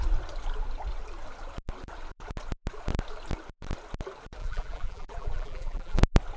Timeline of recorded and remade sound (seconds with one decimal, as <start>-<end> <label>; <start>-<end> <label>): 0.0-4.4 recorded; 4.4-6.0 remade; 6.0-6.4 recorded